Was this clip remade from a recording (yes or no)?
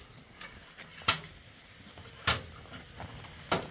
no